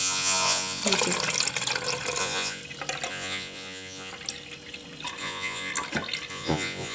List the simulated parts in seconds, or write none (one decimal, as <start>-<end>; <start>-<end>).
0.0-0.8; 2.2-2.6; 3.1-4.1; 5.2-5.7; 6.3-6.9